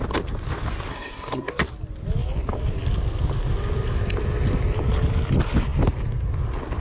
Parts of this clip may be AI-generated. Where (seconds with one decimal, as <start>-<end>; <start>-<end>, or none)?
0.9-1.5